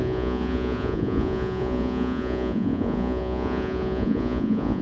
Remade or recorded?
remade